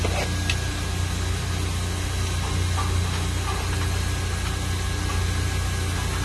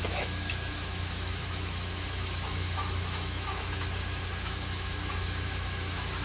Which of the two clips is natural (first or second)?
first